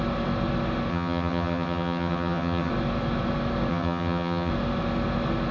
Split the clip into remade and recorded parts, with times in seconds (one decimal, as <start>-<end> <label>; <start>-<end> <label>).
0.0-0.9 recorded; 0.9-2.7 remade; 2.7-3.7 recorded; 3.7-4.5 remade; 4.5-5.5 recorded